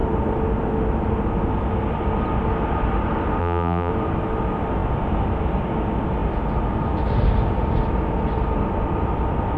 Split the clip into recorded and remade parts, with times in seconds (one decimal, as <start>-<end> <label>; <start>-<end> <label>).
0.0-3.4 recorded; 3.4-3.9 remade; 3.9-9.6 recorded